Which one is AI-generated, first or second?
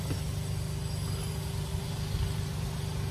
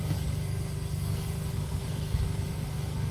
second